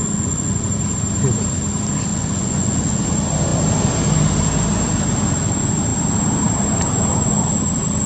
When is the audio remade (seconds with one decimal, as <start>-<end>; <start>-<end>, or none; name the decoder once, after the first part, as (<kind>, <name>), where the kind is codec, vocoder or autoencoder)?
0.0-0.6 (vocoder, Vocos); 2.1-3.0

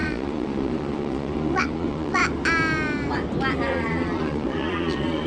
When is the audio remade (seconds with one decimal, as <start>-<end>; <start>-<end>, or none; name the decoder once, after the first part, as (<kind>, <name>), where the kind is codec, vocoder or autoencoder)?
0.0-2.2 (vocoder, Vocos); 3.7-5.3

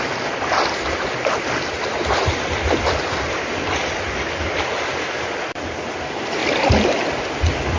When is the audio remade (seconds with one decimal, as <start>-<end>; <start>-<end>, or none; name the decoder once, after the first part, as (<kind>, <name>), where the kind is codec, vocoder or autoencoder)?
none

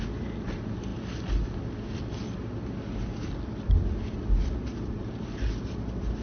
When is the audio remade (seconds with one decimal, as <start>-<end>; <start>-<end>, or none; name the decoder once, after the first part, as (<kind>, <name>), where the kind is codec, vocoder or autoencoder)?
none

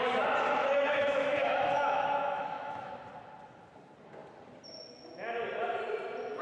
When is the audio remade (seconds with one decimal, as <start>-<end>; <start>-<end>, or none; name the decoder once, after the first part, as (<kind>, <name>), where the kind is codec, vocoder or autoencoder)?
0.6-2.9 (autoencoder, DAC-VAE)

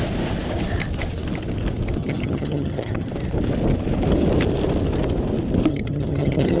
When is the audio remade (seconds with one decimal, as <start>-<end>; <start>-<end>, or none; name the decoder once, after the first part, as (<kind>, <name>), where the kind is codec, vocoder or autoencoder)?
2.0-3.1 (vocoder, HiFi-GAN); 5.7-6.6

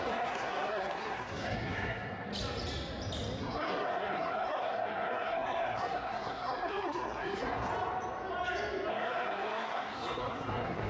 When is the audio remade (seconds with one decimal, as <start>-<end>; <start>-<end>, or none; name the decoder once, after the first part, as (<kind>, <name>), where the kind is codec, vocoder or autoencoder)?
0.0-2.3 (codec, SNAC); 3.4-7.7; 8.9-10.9

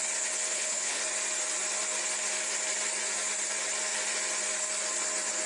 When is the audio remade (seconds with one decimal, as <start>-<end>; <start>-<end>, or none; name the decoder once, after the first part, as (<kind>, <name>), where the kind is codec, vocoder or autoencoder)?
0.5-1.0 (codec, HILCodec)